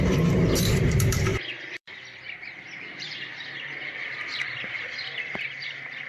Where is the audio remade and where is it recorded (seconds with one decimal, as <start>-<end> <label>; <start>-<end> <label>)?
0.0-6.1 remade

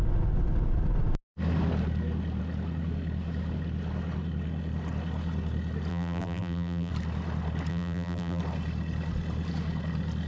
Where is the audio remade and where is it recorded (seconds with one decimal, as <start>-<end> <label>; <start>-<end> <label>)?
0.0-5.9 recorded; 5.9-6.9 remade; 6.9-7.7 recorded; 7.7-8.4 remade; 8.4-10.3 recorded